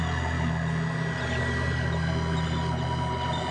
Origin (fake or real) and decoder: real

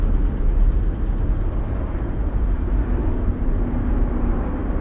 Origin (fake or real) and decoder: real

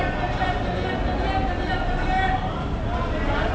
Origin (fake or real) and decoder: real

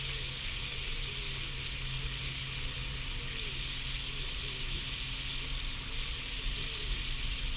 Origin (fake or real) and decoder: real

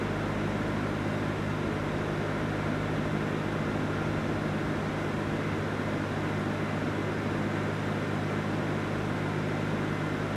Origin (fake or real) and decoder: real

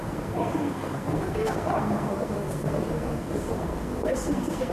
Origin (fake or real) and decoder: fake, codec, SNAC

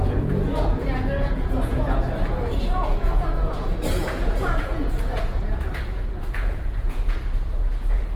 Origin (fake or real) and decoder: fake, vocoder, Vocos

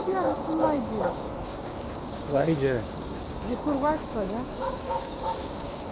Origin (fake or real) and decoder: fake, codec, DAC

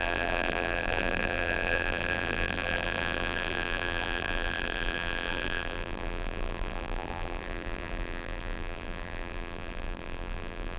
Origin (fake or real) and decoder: fake, vocoder, BigVGAN v2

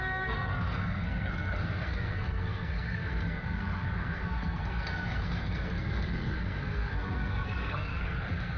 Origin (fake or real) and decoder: fake, codec, SNAC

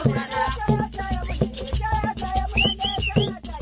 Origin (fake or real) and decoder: fake, vocoder, Vocos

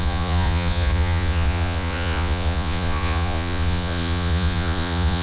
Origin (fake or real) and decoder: fake, vocoder, Vocos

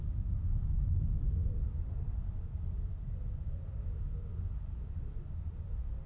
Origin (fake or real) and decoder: real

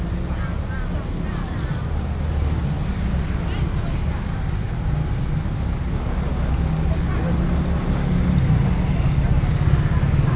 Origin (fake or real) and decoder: real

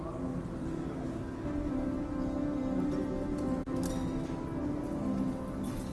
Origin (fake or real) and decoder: real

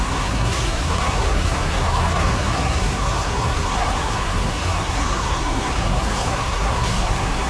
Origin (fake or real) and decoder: fake, codec, SNAC